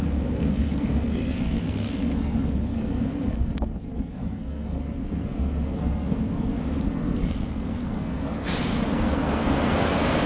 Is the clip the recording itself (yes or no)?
no